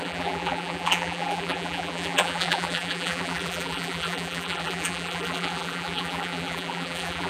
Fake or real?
fake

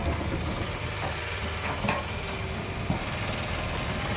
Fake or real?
real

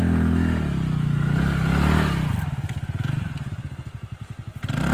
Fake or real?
real